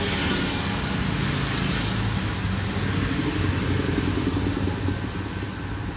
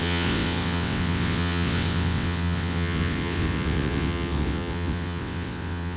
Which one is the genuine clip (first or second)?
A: first